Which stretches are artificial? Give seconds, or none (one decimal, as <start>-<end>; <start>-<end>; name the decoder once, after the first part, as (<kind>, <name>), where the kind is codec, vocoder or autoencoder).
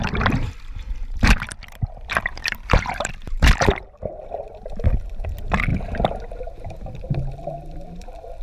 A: 0.0-4.0 (vocoder, BigVGAN v2); 4.5-5.7; 6.4-8.4